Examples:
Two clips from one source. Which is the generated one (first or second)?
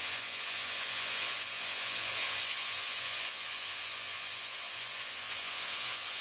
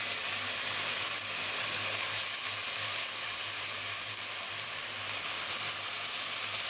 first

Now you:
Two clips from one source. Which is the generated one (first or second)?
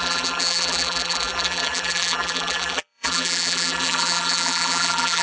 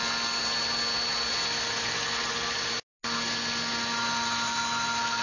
first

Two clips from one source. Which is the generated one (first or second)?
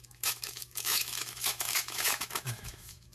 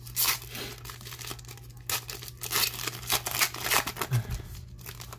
first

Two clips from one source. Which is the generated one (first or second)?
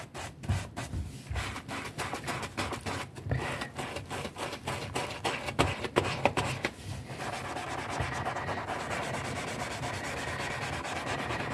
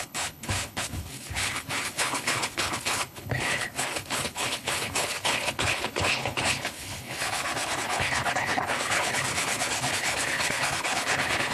second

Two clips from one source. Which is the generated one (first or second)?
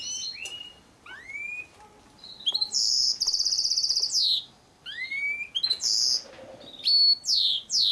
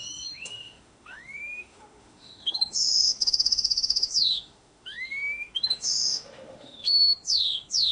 second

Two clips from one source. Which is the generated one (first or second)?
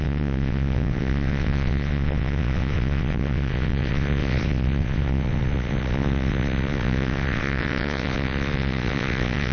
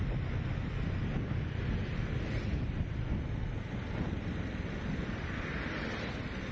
first